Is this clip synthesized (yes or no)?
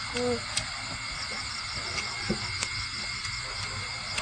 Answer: no